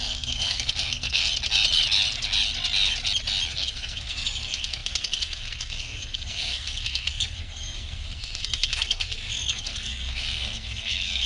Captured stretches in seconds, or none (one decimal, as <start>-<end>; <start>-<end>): 1.3-3.5